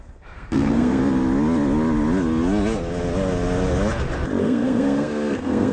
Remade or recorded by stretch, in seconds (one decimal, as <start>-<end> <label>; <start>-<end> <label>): 0.0-1.0 remade; 1.0-4.4 recorded; 4.4-5.7 remade